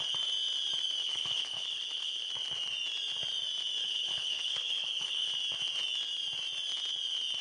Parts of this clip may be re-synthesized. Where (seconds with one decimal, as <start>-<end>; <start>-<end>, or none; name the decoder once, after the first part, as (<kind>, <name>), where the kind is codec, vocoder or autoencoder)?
1.0-2.3 (codec, HILCodec); 3.8-5.3